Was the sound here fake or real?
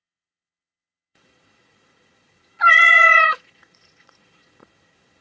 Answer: fake